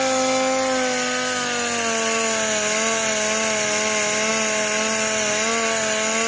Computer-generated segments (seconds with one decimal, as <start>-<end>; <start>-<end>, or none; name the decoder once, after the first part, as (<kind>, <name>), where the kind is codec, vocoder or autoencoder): none